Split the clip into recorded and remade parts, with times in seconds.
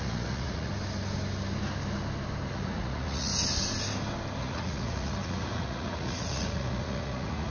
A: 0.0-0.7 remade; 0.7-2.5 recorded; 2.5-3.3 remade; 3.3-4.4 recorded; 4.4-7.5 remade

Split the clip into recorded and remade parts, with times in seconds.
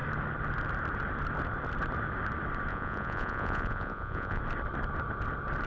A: 0.0-2.7 recorded; 2.7-4.4 remade; 4.4-5.7 recorded